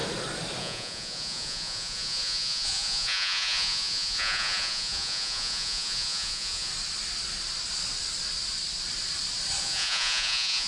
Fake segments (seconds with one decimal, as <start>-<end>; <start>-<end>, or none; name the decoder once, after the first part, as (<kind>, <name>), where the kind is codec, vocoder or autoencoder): 0.6-6.7 (vocoder, Vocos); 9.6-10.7